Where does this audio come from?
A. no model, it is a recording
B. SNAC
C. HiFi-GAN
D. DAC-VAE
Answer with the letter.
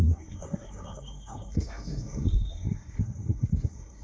B